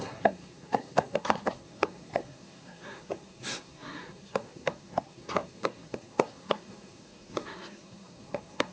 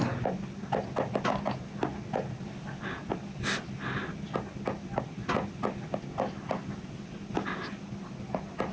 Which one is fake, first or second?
first